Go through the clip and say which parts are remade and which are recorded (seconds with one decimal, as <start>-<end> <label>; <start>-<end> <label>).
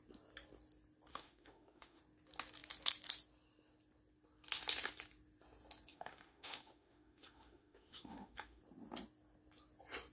0.0-1.1 recorded; 1.1-2.0 remade; 2.0-5.9 recorded; 5.9-8.6 remade; 8.6-10.1 recorded